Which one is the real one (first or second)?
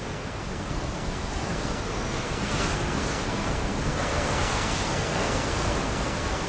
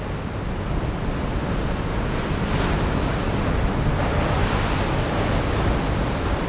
second